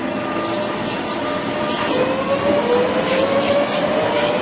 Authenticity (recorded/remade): recorded